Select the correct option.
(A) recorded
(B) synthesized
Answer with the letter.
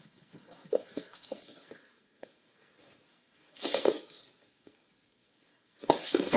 B